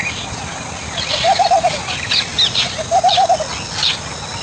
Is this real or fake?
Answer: real